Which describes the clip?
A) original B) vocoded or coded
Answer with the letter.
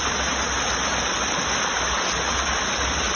A